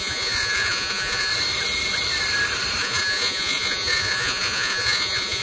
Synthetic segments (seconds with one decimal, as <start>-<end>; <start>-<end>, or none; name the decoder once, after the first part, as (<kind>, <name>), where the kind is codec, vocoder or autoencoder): 0.0-1.3 (vocoder, Vocos); 2.8-5.4